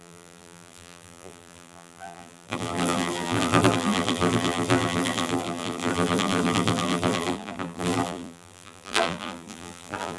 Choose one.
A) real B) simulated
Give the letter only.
B